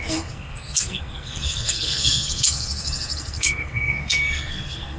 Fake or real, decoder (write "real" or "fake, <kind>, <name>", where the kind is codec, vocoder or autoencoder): fake, codec, SNAC